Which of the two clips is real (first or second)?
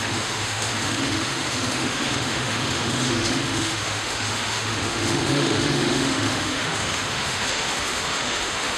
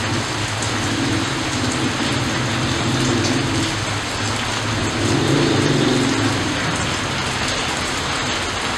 second